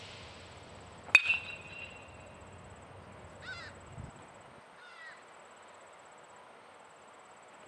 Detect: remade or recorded recorded